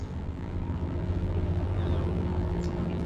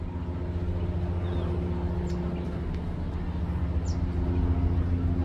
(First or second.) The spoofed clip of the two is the first